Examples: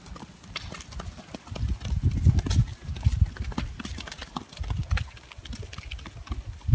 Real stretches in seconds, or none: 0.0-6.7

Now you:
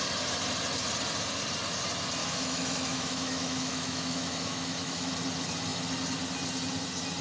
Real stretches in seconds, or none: 0.0-2.2; 5.1-7.2